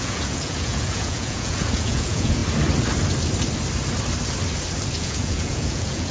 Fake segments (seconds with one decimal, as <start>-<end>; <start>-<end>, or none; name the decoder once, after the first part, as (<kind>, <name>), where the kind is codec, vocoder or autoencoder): 0.0-2.4 (vocoder, Vocos); 5.0-6.1